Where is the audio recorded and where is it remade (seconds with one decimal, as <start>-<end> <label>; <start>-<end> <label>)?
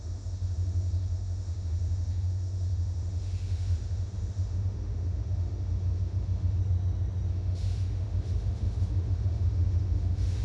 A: 0.0-6.6 remade; 6.6-7.3 recorded; 7.3-10.4 remade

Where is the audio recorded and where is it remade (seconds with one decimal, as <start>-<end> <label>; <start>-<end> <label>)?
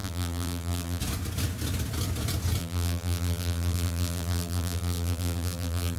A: 0.0-1.0 remade; 1.0-2.6 recorded; 2.6-6.0 remade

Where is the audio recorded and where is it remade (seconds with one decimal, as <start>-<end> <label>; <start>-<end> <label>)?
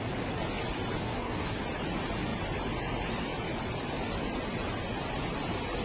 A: 0.0-1.0 recorded; 1.0-1.6 remade; 1.6-5.8 recorded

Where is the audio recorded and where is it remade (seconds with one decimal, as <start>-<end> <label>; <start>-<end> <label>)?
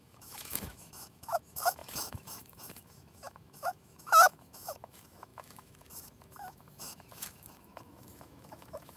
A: 0.0-9.0 remade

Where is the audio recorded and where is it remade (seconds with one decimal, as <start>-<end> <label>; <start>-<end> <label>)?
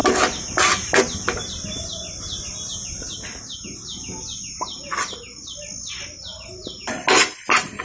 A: 0.0-7.8 recorded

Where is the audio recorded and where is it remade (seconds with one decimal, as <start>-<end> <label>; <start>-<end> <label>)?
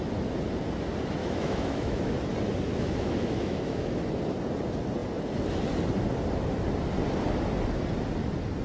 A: 0.0-1.2 recorded; 1.2-2.1 remade; 2.1-2.7 recorded; 2.7-3.9 remade; 3.9-8.6 recorded